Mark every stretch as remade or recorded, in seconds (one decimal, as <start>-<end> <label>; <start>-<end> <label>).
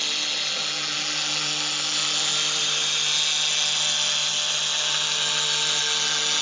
0.0-6.4 recorded